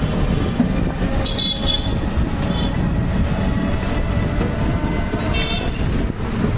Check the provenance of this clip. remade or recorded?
recorded